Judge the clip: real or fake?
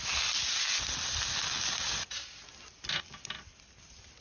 real